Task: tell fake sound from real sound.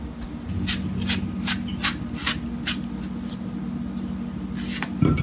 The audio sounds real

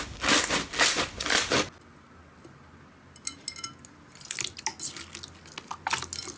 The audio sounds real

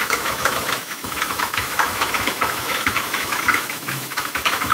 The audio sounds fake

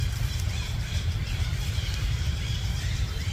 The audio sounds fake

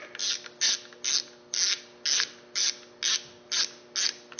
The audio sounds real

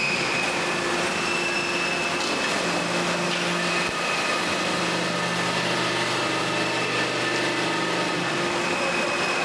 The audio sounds real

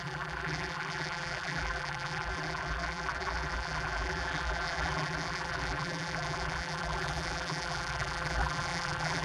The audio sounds fake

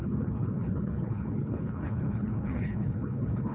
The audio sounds fake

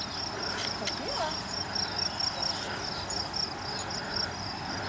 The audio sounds real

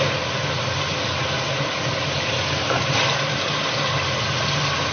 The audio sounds real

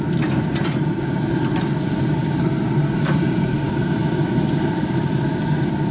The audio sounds real